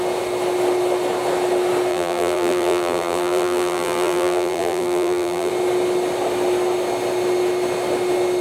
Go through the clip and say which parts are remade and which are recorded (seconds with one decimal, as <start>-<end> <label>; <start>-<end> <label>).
0.0-1.9 recorded; 1.9-5.5 remade; 5.5-8.4 recorded